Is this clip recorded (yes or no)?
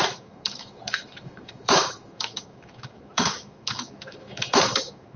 no